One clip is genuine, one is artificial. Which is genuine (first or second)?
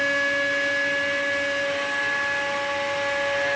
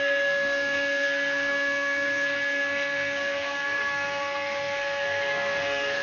first